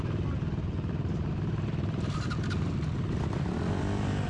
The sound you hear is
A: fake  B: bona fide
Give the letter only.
B